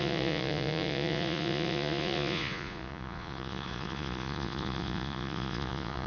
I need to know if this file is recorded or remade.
remade